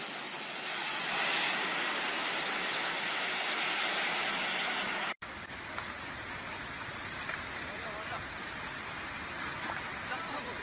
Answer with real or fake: real